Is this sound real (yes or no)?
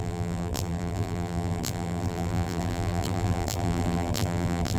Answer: no